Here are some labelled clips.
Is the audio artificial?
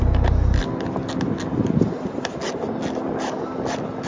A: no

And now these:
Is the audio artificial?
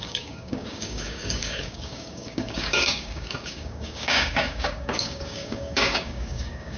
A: yes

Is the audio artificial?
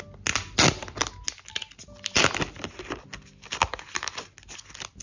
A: no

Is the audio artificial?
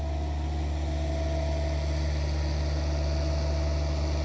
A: no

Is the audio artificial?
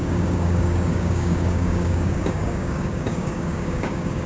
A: yes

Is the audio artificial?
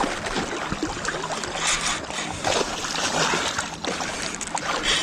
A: no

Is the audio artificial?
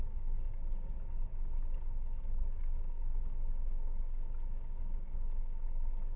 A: yes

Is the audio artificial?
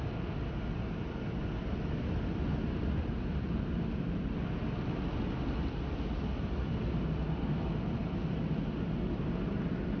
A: no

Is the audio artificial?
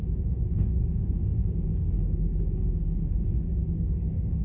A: yes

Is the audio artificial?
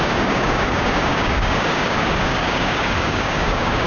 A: yes